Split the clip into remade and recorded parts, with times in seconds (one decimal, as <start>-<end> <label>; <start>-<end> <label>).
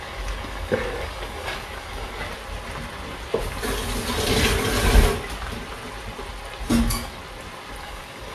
0.0-2.3 remade; 2.3-6.8 recorded; 6.8-7.2 remade; 7.2-7.8 recorded; 7.8-8.3 remade